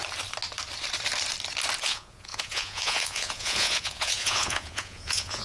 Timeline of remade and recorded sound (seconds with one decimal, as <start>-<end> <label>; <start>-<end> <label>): 0.0-1.8 recorded; 1.8-5.4 remade